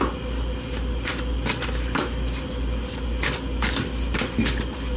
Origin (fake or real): real